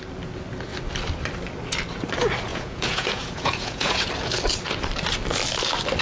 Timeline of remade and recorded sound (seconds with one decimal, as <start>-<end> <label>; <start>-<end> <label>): 0.0-2.5 recorded; 2.5-4.1 remade; 4.1-6.0 recorded